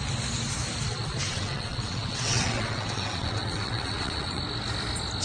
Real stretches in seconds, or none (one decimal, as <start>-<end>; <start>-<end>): 0.0-1.3; 4.4-5.2